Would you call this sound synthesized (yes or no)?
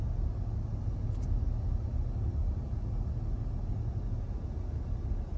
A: no